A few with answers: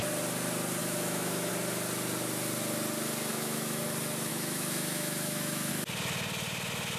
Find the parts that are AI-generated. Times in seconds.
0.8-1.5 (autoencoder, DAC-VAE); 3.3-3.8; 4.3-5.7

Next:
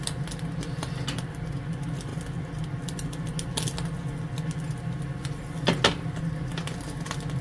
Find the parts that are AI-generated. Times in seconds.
none

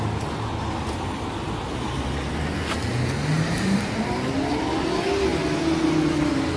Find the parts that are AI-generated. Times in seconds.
none

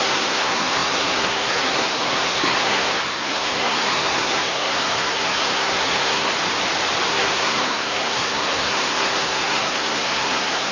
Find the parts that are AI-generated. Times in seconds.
0.0-6.3 (codec, SNAC); 7.1-10.7

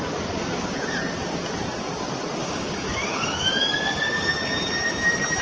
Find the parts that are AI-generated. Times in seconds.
2.4-4.3 (codec, DAC)

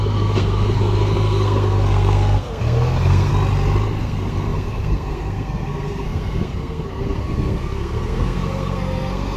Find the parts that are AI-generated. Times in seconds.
0.0-3.3 (codec, SNAC); 4.0-9.4

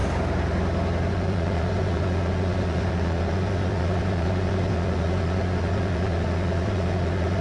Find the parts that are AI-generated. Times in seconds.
1.1-7.4 (vocoder, Vocos)